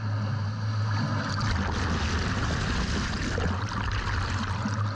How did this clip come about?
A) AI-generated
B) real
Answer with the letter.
B